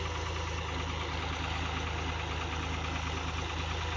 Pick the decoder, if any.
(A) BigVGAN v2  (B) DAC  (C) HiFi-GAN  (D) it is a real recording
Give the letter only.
D